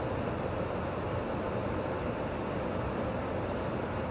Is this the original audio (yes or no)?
yes